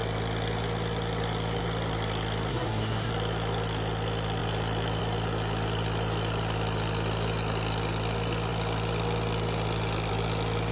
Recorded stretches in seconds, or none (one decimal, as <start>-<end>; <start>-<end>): 0.0-2.5; 3.1-10.7